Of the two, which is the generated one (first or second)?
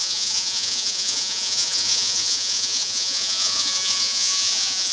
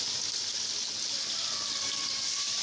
first